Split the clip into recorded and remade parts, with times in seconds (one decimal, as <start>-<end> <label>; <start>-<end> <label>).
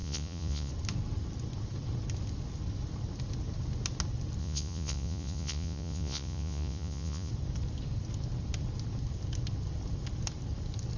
0.0-0.7 remade; 0.7-4.4 recorded; 4.4-7.3 remade; 7.3-11.0 recorded